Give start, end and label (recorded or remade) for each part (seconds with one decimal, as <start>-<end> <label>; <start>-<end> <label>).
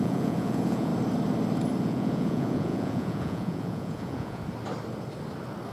0.0-0.9 remade; 0.9-1.8 recorded; 1.8-4.4 remade; 4.4-5.7 recorded